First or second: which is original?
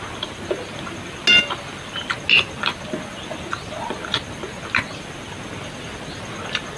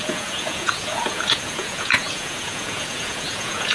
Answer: first